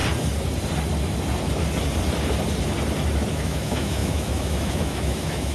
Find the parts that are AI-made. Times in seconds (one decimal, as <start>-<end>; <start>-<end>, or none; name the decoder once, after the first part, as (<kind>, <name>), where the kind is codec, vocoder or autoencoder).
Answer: 3.3-5.5 (autoencoder, DAC-VAE)

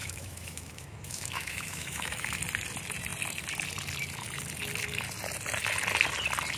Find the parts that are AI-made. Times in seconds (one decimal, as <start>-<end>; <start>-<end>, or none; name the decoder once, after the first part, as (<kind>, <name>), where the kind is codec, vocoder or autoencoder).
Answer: 0.0-2.4 (autoencoder, DAC-VAE)

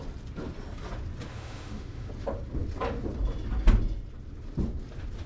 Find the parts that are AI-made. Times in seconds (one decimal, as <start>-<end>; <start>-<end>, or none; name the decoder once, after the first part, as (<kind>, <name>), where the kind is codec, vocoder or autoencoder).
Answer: 1.3-2.1 (autoencoder, DAC-VAE)

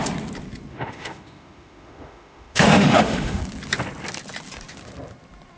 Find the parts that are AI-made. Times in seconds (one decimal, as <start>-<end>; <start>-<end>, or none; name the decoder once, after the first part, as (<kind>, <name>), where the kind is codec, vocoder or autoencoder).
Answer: 0.7-3.4 (autoencoder, DAC-VAE)

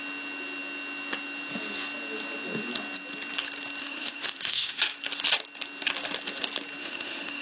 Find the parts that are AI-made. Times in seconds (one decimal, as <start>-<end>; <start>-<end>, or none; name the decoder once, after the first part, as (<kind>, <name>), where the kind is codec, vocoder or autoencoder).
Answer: 3.8-4.8 (autoencoder, DAC-VAE); 6.8-7.4

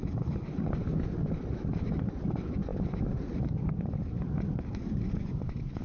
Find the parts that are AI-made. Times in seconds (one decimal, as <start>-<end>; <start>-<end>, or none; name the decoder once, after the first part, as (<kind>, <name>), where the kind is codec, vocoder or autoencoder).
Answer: none